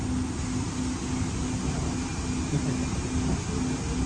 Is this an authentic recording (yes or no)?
yes